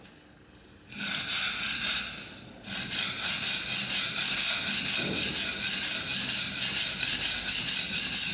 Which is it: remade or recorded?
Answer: recorded